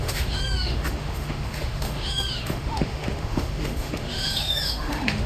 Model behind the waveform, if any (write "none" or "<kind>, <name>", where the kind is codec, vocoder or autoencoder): autoencoder, DAC-VAE